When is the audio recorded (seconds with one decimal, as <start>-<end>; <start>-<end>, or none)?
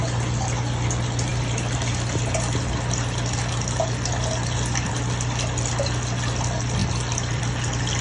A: 0.0-8.0